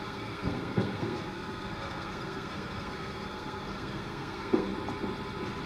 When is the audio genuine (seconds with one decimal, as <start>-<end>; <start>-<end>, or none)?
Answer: 4.7-5.7